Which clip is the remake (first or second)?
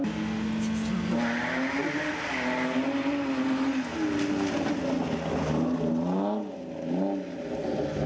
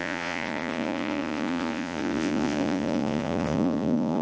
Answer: second